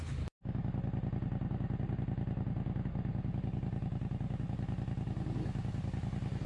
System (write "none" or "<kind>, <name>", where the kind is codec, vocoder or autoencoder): none